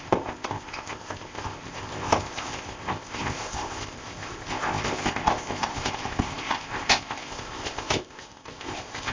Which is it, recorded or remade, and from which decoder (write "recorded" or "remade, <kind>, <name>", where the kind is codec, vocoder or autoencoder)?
remade, codec, ZipCodec